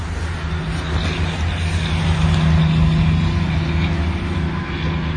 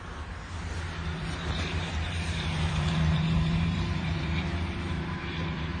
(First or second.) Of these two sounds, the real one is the first